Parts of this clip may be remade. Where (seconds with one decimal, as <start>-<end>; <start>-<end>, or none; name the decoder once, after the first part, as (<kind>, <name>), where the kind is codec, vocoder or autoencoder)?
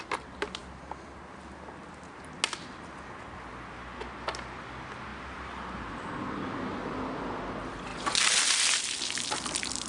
none